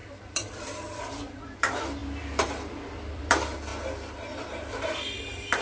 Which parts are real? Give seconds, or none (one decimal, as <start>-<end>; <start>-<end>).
3.7-4.4